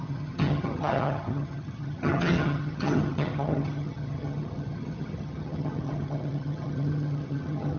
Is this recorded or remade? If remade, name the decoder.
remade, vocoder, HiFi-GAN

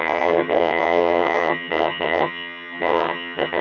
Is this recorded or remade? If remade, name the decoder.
remade, vocoder, HiFi-GAN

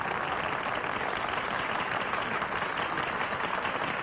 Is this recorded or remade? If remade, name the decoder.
recorded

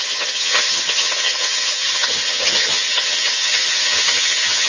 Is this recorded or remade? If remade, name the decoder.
remade, vocoder, HiFi-GAN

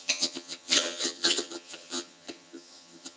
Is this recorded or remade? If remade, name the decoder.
remade, vocoder, HiFi-GAN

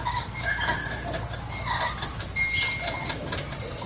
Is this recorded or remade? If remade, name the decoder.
recorded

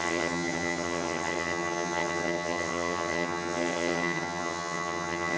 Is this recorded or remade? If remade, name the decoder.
remade, vocoder, HiFi-GAN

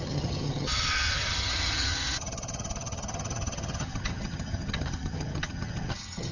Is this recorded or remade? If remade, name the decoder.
remade, vocoder, HiFi-GAN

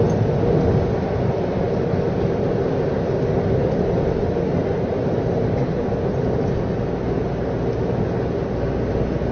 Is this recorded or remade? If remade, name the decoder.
recorded